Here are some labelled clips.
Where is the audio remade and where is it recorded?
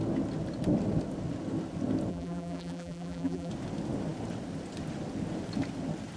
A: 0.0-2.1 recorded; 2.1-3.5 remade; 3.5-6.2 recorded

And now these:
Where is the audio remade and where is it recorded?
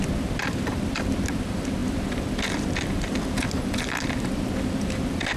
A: 0.0-5.4 recorded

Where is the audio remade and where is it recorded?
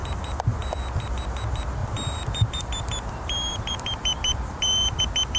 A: 0.0-1.1 remade; 1.1-1.8 recorded; 1.8-5.0 remade; 5.0-5.4 recorded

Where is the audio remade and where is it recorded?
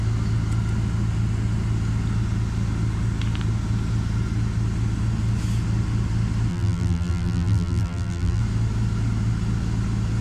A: 0.0-6.5 recorded; 6.5-8.4 remade; 8.4-10.2 recorded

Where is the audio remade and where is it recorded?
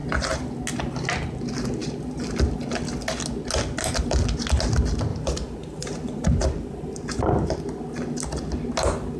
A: 0.0-5.1 recorded; 5.1-7.2 remade; 7.2-9.2 recorded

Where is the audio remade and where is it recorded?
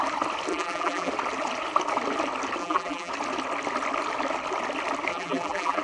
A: 0.0-0.5 recorded; 0.5-1.1 remade; 1.1-2.6 recorded; 2.6-3.1 remade; 3.1-5.1 recorded; 5.1-5.8 remade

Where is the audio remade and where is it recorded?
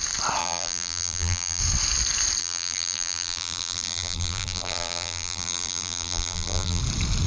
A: 0.0-0.4 recorded; 0.4-1.6 remade; 1.6-2.4 recorded; 2.4-6.8 remade; 6.8-7.3 recorded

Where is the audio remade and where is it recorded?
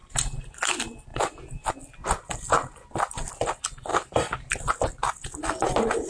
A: 0.0-0.7 remade; 0.7-1.1 recorded; 1.1-1.7 remade; 1.7-3.9 recorded; 3.9-4.7 remade; 4.7-6.1 recorded